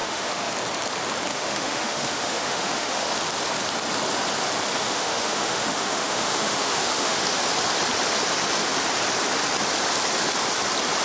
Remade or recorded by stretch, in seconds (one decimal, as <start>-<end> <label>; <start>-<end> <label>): 0.0-0.5 remade; 0.5-1.3 recorded; 1.3-3.1 remade; 3.1-4.8 recorded; 4.8-7.2 remade; 7.2-11.0 recorded